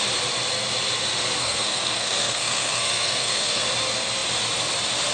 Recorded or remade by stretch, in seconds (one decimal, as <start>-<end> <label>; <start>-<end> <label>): 0.0-1.4 recorded; 1.4-3.6 remade; 3.6-5.1 recorded